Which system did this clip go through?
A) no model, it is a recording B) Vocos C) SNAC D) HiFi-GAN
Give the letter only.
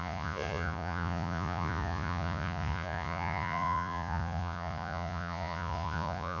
B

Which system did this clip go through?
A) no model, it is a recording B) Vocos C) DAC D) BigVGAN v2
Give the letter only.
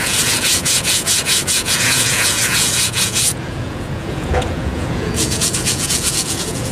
B